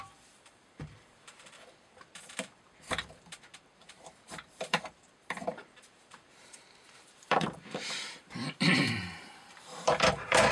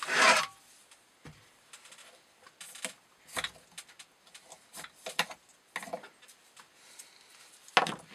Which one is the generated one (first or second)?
first